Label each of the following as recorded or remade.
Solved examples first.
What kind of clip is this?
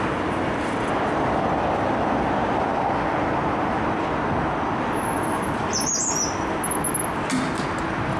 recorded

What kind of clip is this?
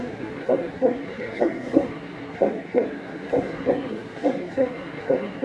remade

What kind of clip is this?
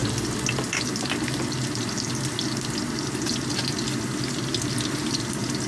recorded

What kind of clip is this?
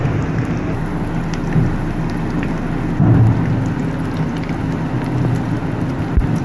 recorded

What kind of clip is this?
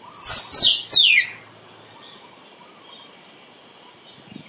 recorded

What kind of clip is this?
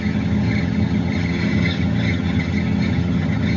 remade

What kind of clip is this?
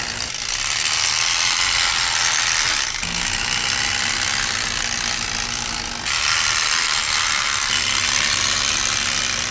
recorded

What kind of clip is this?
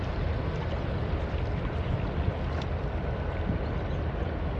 recorded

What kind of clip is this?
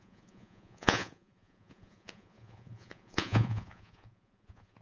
remade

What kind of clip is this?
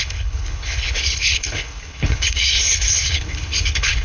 remade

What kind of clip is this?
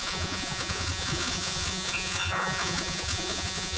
remade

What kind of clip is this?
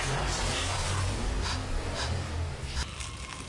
recorded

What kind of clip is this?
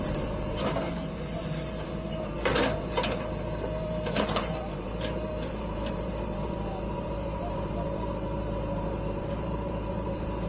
remade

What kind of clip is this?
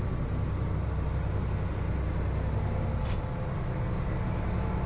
recorded